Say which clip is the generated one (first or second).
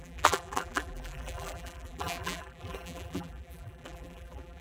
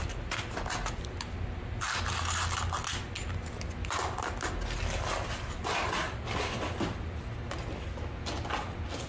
first